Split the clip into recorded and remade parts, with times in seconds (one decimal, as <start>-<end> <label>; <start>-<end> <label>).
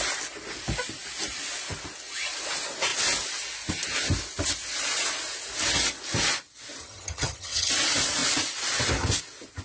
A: 0.0-6.8 recorded; 6.8-7.7 remade; 7.7-9.6 recorded